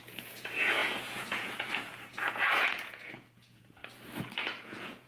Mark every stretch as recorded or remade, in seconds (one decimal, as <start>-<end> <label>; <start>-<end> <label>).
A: 0.0-3.8 remade; 3.8-4.6 recorded; 4.6-5.1 remade